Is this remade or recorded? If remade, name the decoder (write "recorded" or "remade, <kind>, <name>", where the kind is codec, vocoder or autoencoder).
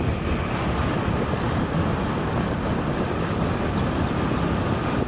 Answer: recorded